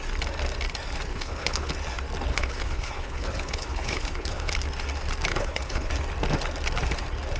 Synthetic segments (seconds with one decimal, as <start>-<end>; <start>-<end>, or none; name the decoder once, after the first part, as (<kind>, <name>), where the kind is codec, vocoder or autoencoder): 1.1-1.7 (codec, HILCodec); 2.3-4.5; 5.3-5.9